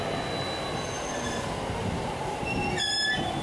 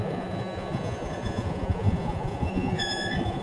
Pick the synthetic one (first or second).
second